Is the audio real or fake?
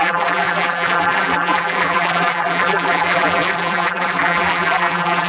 fake